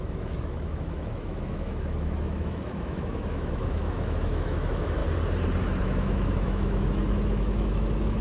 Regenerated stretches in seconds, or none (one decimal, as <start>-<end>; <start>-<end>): 0.0-5.0; 5.8-8.2

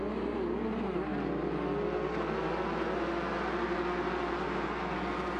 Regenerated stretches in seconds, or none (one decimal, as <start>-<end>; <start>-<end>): none

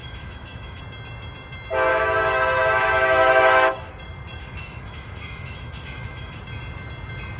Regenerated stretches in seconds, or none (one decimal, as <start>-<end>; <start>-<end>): 0.0-0.8; 1.9-3.9; 4.4-6.4

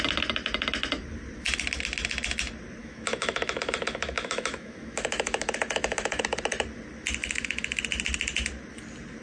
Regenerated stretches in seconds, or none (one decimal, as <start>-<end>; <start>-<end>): 2.8-6.2; 7.2-7.8

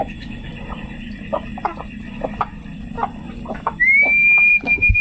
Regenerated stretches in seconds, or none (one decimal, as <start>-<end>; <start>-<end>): 0.0-0.5; 3.5-5.0

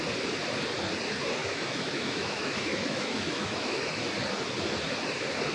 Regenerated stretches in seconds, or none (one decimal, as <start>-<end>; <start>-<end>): 1.4-4.0

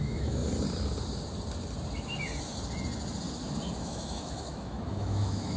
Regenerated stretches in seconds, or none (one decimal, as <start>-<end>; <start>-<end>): 0.0-0.4; 3.8-5.6